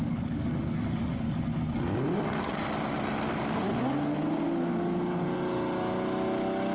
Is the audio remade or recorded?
recorded